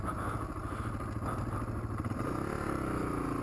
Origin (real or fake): real